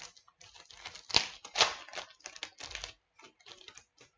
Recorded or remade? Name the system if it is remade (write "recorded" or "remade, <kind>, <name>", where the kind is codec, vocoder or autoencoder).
recorded